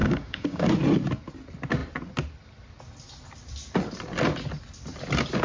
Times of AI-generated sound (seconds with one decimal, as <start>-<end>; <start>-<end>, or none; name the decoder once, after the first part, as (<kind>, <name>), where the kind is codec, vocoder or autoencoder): 0.0-0.7 (codec, DAC)